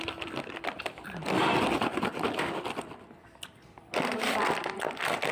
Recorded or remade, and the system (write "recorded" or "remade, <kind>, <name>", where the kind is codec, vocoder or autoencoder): recorded